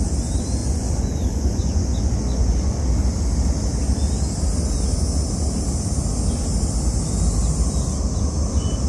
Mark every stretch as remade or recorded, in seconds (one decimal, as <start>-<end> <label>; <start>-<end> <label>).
0.0-0.6 recorded; 0.6-2.8 remade; 2.8-8.9 recorded